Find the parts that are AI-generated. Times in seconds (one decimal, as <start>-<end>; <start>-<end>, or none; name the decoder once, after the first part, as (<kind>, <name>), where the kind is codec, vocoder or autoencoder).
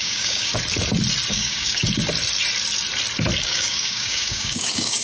0.0-0.5 (codec, DAC); 1.3-1.8; 3.4-5.0